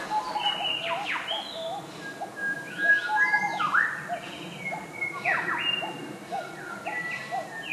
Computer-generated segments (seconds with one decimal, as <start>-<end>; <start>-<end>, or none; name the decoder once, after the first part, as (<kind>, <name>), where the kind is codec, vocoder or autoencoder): 2.4-2.9 (autoencoder, DAC-VAE)

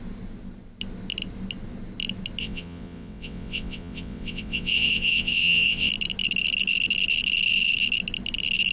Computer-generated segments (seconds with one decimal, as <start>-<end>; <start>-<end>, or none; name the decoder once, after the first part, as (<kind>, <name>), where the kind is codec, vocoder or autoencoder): 2.4-5.9 (vocoder, WaveNeXt)

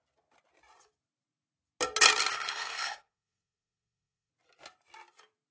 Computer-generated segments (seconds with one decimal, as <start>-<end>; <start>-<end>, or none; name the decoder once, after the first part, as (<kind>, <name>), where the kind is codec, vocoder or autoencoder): 2.3-4.3 (codec, SNAC)